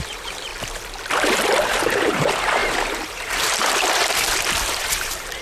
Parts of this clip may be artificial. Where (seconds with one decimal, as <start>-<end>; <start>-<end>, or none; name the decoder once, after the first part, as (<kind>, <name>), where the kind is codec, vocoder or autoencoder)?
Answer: 0.0-0.5 (vocoder, BigVGAN v2); 1.7-5.4